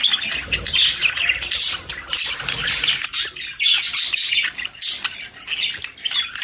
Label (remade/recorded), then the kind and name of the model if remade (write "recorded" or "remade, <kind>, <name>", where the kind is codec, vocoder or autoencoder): recorded